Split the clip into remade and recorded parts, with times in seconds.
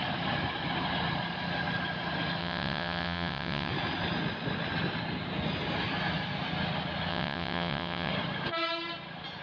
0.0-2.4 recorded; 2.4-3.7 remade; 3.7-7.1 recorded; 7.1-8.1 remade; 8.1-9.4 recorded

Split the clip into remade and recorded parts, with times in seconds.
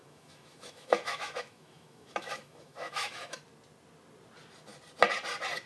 0.0-3.4 remade; 3.4-5.7 recorded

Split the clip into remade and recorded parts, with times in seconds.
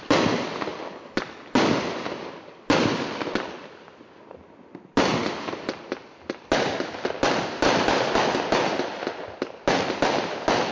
0.0-10.7 recorded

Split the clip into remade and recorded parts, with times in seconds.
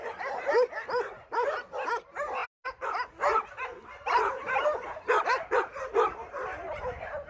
0.0-7.3 recorded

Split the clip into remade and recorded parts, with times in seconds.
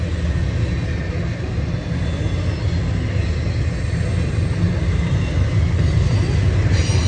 0.0-7.1 recorded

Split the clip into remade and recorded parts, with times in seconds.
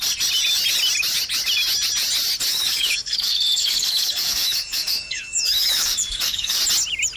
0.0-2.5 recorded; 2.5-6.6 remade; 6.6-7.2 recorded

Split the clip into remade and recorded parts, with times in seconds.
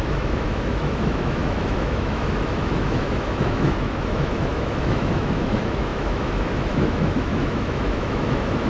0.0-8.7 remade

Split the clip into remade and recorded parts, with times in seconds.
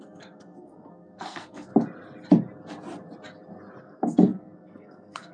0.0-1.7 remade; 1.7-3.8 recorded; 3.8-5.3 remade